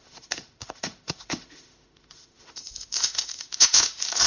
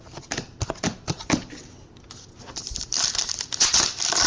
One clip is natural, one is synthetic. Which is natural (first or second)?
second